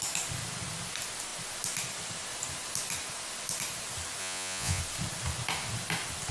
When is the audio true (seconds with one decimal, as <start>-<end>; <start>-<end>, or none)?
0.0-4.2; 4.8-6.3